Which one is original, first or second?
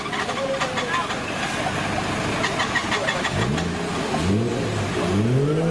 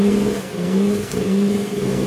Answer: first